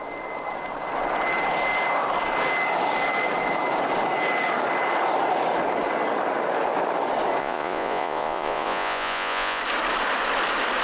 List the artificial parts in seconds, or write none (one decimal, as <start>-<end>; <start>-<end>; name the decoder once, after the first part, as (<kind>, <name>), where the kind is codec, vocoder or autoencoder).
7.4-9.6 (vocoder, Vocos)